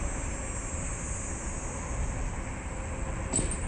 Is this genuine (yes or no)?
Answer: yes